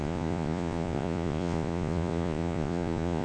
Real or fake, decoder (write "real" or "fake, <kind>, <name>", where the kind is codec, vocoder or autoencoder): fake, vocoder, Vocos